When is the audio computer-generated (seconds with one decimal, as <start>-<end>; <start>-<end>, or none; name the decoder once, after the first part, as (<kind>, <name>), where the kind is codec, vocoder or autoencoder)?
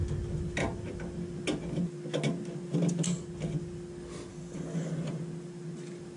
4.3-4.9 (codec, DAC)